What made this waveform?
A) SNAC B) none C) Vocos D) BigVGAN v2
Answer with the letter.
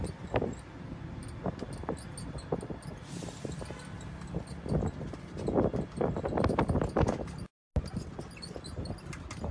B